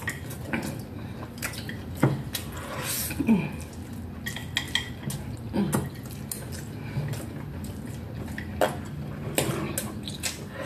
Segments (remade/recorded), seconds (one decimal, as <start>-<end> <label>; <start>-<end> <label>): 0.0-10.7 recorded